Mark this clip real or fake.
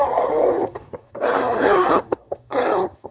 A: fake